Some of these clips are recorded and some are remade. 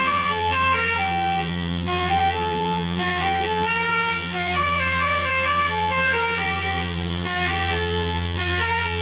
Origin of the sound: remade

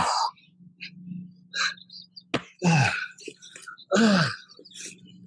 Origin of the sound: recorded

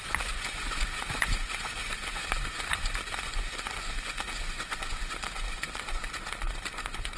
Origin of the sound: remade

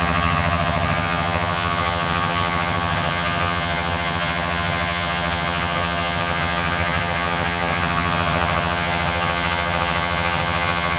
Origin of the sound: remade